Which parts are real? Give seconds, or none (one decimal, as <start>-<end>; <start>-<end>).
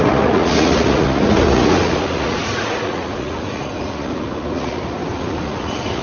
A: none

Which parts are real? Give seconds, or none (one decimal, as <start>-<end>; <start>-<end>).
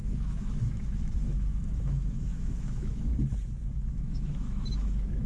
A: 3.1-3.7